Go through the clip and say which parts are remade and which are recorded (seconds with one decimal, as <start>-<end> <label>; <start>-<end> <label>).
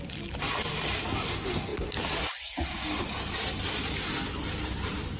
0.0-5.2 recorded